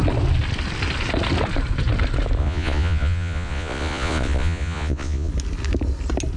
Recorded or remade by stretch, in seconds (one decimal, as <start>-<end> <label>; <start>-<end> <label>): 0.0-2.4 recorded; 2.4-5.3 remade; 5.3-6.4 recorded

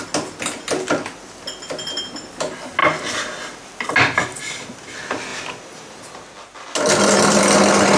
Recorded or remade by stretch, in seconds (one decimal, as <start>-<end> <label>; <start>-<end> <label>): 0.0-8.0 recorded